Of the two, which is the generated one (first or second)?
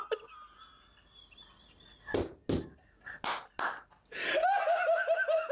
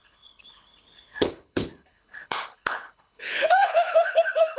second